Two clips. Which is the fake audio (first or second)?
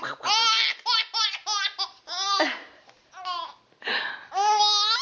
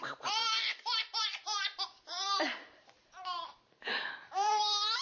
second